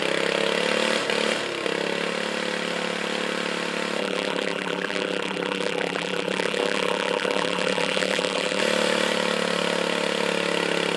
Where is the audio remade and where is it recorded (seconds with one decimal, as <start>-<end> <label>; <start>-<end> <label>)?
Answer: 0.0-4.0 recorded; 4.0-8.6 remade; 8.6-11.0 recorded